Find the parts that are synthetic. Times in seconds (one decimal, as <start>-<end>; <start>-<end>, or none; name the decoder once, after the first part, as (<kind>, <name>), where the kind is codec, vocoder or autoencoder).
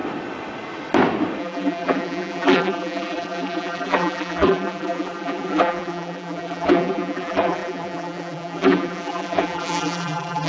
1.4-10.5 (vocoder, BigVGAN v2)